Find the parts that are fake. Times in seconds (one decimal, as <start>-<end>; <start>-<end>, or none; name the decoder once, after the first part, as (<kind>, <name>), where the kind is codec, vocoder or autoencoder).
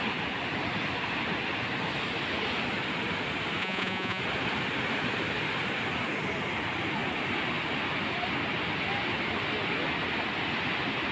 3.6-4.2 (vocoder, Vocos)